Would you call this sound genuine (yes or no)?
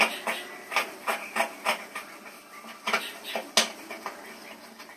yes